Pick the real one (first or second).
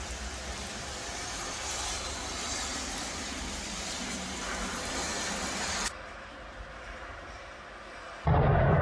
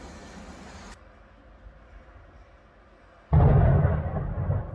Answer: second